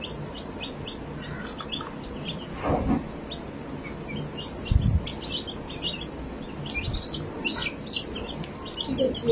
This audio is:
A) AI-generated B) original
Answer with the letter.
B